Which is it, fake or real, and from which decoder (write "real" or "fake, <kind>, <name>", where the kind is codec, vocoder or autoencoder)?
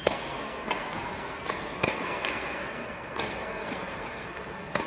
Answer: fake, codec, SNAC